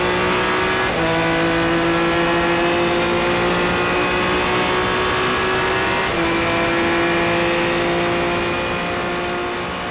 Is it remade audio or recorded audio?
recorded